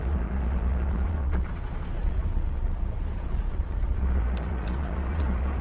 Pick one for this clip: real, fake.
fake